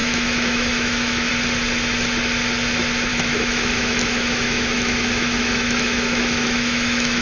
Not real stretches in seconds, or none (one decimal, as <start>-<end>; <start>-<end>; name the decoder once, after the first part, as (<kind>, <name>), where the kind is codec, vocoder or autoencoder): 0.0-1.3 (autoencoder, DAC-VAE); 3.1-7.2